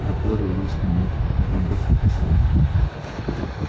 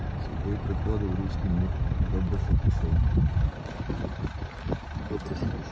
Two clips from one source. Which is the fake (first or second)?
first